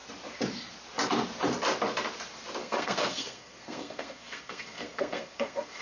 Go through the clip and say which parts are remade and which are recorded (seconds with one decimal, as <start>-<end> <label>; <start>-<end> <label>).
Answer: 0.0-2.6 recorded; 2.6-5.8 remade